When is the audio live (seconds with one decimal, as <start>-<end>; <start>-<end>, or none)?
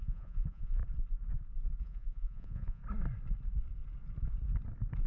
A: 0.8-1.8; 2.8-5.1